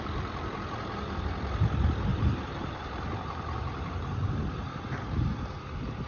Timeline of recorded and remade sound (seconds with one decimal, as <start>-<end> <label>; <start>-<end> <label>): 0.0-2.1 recorded; 2.1-4.3 remade; 4.3-6.1 recorded